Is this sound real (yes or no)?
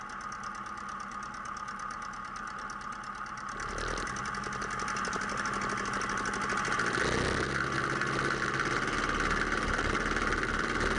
yes